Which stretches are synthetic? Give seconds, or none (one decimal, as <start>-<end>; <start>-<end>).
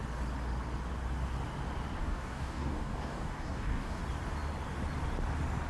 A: 2.0-4.0